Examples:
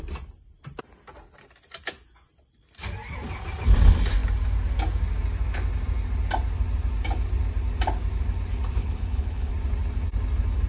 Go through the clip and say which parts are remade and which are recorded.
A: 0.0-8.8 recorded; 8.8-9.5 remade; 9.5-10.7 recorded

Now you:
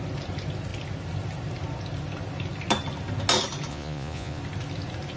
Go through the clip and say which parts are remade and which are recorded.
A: 0.0-3.7 recorded; 3.7-4.4 remade; 4.4-5.2 recorded